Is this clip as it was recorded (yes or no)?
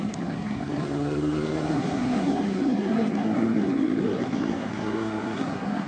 no